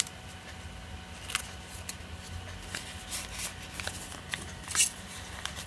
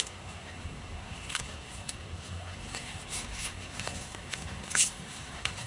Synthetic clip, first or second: second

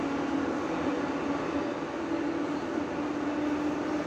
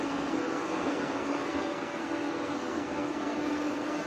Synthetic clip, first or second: second